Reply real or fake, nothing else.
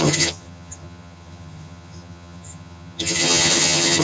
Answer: fake